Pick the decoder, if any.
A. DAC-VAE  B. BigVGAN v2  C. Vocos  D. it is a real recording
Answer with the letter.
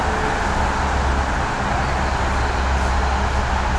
D